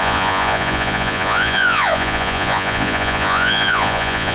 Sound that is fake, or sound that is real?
fake